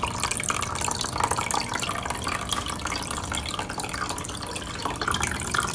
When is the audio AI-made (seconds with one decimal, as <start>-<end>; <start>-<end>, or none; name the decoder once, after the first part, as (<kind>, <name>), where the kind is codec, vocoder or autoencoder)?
none